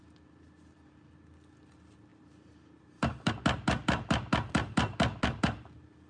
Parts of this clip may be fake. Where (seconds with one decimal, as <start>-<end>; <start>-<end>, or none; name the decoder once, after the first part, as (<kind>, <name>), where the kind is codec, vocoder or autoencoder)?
2.1-3.3 (vocoder, BigVGAN v2)